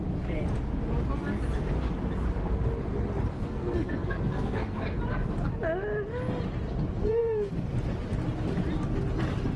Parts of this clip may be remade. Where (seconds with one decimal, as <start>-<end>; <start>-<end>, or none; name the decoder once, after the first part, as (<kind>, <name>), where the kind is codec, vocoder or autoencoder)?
3.3-5.0 (codec, SNAC); 7.0-7.5